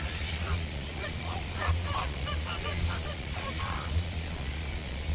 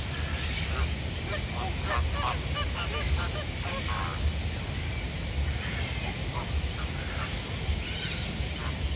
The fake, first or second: first